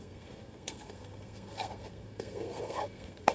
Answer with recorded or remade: remade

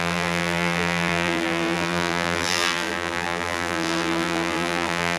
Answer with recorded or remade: remade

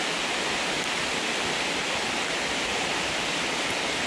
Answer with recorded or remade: recorded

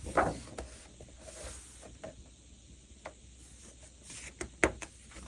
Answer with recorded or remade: recorded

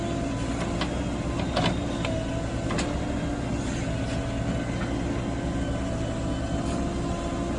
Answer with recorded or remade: recorded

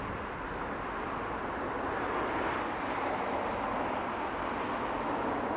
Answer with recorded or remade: recorded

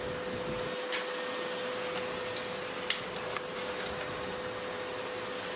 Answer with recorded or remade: recorded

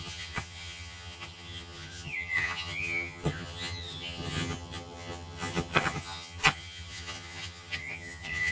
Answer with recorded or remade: remade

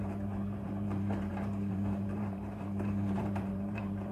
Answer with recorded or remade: remade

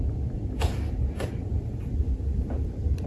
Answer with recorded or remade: recorded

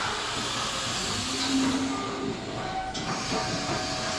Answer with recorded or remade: recorded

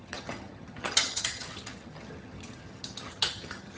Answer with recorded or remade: remade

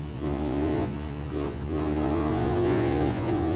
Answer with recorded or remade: remade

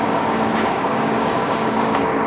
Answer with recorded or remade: remade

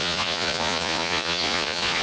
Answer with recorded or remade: remade